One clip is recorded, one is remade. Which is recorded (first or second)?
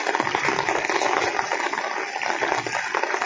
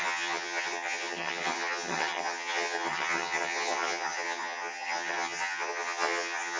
first